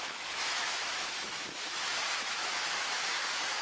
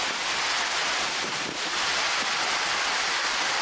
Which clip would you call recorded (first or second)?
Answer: second